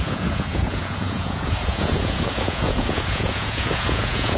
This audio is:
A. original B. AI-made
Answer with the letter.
B